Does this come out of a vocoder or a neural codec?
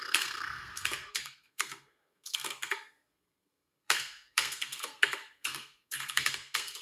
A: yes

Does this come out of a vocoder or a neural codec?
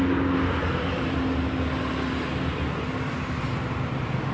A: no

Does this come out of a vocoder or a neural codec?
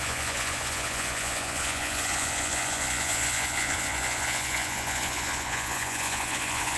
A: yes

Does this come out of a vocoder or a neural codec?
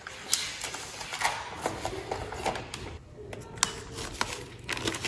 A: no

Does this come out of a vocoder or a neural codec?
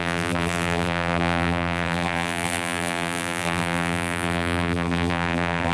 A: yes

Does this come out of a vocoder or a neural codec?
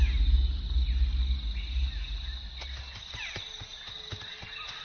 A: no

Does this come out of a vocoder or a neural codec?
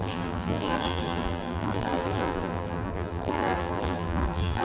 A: yes